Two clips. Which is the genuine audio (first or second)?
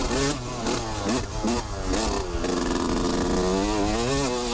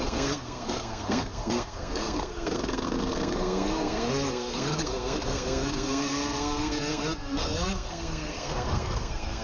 first